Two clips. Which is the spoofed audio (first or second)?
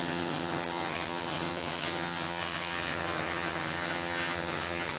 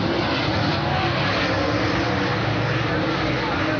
first